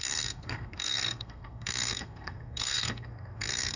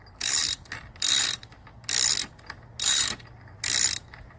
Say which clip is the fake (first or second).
first